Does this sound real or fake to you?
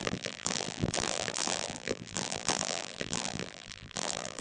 fake